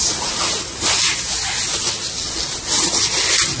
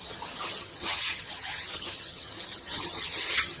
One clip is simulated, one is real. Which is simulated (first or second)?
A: second